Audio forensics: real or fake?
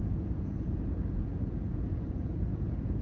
fake